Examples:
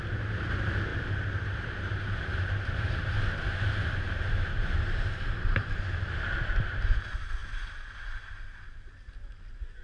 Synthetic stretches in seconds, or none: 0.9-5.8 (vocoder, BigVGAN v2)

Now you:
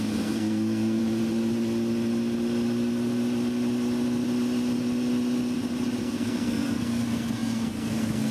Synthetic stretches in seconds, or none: 0.0-1.0 (codec, SNAC); 6.0-8.3

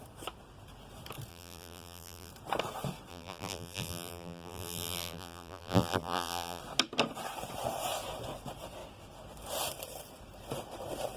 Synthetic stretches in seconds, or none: 1.3-2.3 (vocoder, BigVGAN v2); 3.1-6.6

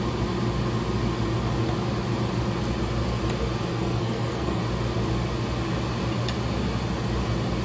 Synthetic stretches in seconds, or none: 3.7-4.6 (codec, SNAC)

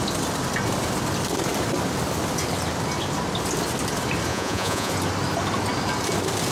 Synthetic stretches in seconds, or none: 4.3-4.9 (vocoder, Vocos)

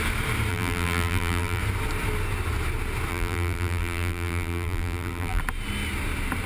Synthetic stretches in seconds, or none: 0.5-1.6 (vocoder, BigVGAN v2); 3.1-5.4

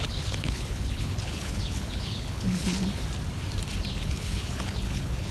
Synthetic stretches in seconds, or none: 0.0-3.0 (codec, HILCodec); 3.9-5.3